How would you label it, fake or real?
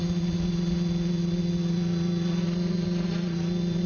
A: fake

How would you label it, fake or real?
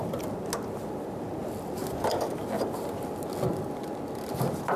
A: real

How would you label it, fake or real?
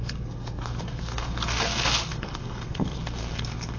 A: fake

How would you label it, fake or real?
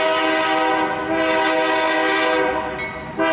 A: real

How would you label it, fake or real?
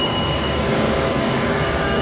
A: fake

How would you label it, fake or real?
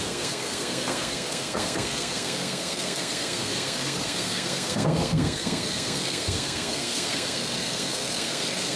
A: fake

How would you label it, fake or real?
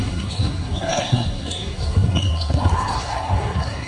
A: fake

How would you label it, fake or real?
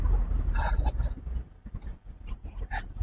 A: real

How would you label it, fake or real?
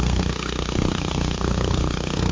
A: fake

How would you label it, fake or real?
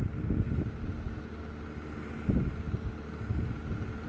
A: real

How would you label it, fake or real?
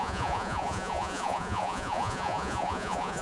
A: fake